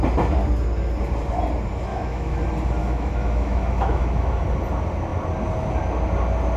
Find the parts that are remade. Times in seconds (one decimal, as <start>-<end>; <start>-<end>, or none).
1.9-2.4; 2.8-4.3